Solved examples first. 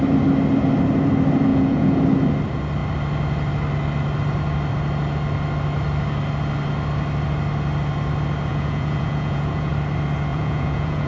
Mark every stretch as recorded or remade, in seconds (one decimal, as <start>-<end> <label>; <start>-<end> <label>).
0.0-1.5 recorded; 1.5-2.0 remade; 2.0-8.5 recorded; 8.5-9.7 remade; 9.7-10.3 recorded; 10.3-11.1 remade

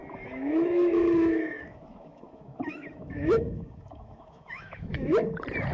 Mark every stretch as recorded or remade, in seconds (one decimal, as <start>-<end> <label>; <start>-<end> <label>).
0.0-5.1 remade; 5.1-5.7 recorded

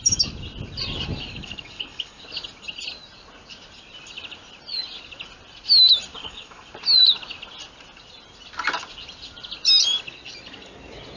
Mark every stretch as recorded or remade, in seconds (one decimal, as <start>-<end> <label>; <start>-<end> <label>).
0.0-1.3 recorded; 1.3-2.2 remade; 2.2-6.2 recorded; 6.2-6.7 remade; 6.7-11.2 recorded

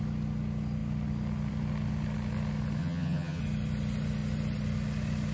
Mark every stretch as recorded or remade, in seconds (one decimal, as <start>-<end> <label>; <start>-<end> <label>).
0.0-2.8 recorded; 2.8-3.4 remade; 3.4-5.3 recorded